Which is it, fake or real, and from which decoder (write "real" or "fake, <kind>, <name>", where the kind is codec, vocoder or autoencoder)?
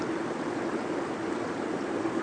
real